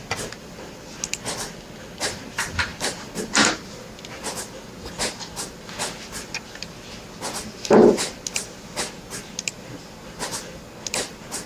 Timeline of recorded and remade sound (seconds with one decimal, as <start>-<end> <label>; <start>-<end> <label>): 0.0-11.5 recorded